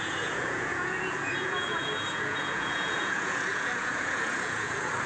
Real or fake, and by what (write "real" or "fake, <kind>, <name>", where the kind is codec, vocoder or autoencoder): fake, vocoder, Vocos